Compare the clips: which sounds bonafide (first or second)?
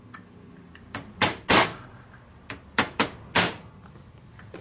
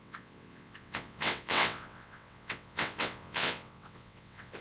first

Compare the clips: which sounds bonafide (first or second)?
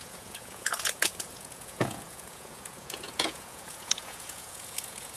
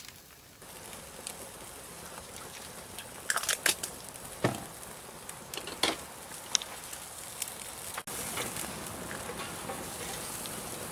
second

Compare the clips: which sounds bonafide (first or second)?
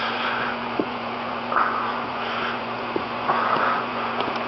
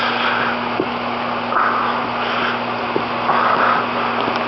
second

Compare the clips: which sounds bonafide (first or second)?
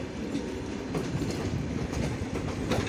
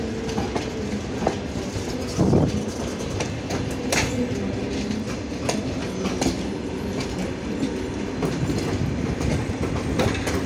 second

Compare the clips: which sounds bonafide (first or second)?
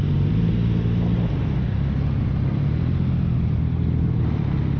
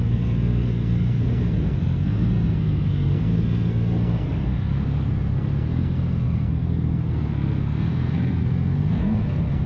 first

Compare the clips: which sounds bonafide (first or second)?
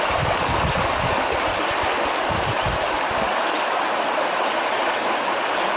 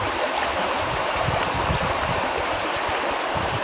first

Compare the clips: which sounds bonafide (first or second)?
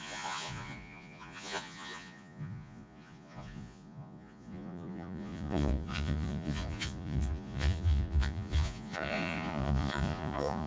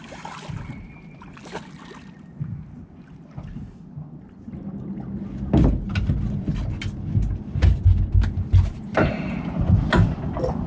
second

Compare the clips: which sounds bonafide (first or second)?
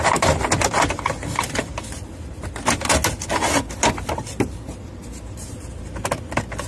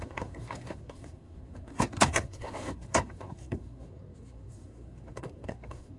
first